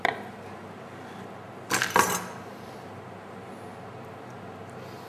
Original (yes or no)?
yes